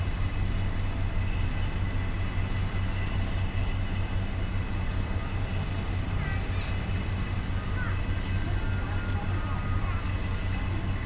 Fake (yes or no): no